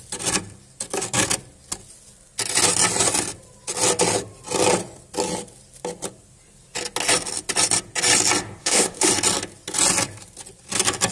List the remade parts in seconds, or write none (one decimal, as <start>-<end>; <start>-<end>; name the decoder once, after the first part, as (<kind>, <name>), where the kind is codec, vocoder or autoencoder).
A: 8.6-9.1 (autoencoder, DAC-VAE)